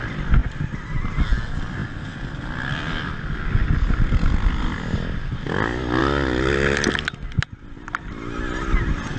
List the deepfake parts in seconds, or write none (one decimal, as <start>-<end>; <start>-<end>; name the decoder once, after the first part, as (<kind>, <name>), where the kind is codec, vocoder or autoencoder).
none